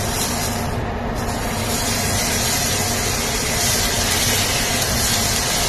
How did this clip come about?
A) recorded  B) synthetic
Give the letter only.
A